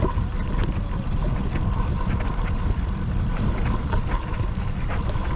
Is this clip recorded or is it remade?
recorded